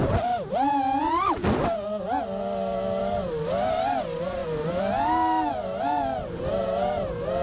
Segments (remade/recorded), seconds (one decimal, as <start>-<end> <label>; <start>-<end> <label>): 0.0-1.4 remade; 1.4-3.0 recorded; 3.0-4.4 remade; 4.4-5.5 recorded; 5.5-7.4 remade